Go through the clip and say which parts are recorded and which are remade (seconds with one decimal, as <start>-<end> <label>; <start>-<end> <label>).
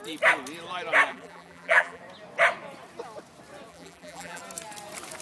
0.0-1.1 recorded; 1.1-2.0 remade; 2.0-3.7 recorded; 3.7-4.4 remade; 4.4-5.2 recorded